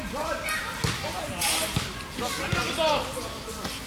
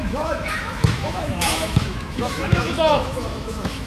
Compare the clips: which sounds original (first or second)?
first